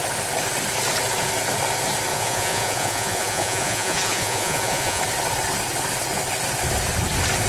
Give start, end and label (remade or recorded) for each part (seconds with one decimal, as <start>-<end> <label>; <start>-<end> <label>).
0.0-2.1 recorded; 2.1-5.0 remade; 5.0-7.5 recorded

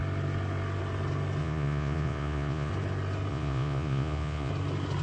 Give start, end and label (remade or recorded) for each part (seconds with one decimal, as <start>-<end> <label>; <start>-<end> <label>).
0.0-1.4 recorded; 1.4-2.7 remade; 2.7-3.3 recorded; 3.3-4.5 remade; 4.5-5.0 recorded

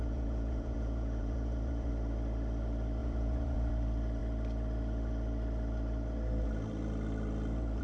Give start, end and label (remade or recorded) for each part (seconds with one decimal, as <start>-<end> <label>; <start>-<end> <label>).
0.0-1.9 remade; 1.9-3.0 recorded; 3.0-3.7 remade; 3.7-7.8 recorded

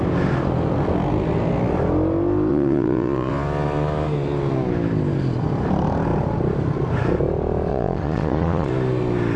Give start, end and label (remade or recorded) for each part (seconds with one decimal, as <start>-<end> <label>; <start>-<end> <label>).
0.0-2.5 recorded; 2.5-3.3 remade; 3.3-7.7 recorded; 7.7-8.7 remade; 8.7-9.4 recorded

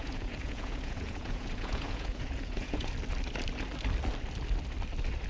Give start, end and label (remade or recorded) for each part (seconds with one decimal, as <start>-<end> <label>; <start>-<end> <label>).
0.0-2.9 remade; 2.9-5.3 recorded

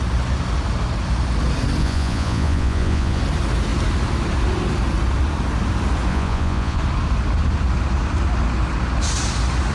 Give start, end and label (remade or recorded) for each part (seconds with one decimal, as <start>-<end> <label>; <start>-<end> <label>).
0.0-1.8 recorded; 1.8-3.2 remade; 3.2-6.1 recorded; 6.1-6.8 remade; 6.8-9.7 recorded